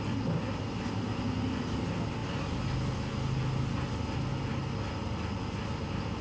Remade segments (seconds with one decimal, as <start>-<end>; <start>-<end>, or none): none